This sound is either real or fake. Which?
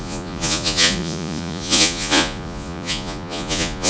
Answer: fake